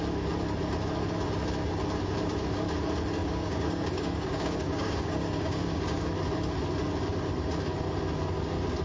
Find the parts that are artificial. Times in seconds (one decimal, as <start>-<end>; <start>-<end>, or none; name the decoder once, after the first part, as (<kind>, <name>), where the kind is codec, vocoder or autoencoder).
3.2-6.0 (codec, DAC)